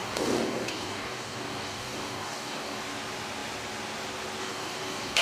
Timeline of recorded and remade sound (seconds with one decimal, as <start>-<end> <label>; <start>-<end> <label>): 0.0-2.8 remade; 2.8-4.4 recorded; 4.4-5.2 remade